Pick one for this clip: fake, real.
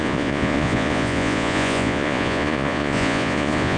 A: fake